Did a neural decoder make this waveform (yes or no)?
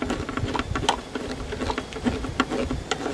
no